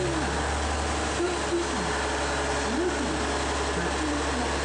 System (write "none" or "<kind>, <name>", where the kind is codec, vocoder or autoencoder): none